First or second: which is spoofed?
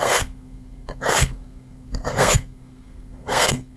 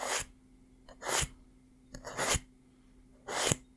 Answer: first